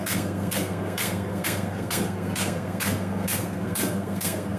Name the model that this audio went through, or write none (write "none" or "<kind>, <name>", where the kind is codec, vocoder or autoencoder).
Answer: codec, SNAC